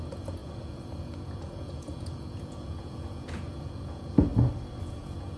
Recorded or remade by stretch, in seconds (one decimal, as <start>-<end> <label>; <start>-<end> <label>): 0.0-4.3 remade; 4.3-4.8 recorded; 4.8-5.4 remade